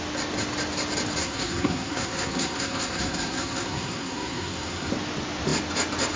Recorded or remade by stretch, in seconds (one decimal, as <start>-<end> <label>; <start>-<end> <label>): 0.0-1.2 recorded; 1.2-4.9 remade; 4.9-6.2 recorded